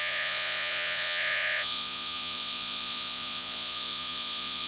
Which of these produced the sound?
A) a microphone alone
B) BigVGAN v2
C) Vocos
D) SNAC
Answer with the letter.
C